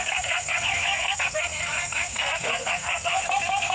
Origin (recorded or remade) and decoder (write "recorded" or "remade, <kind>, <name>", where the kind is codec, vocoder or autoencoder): remade, codec, SNAC